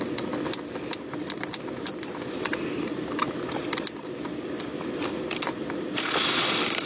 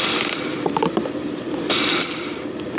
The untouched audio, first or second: first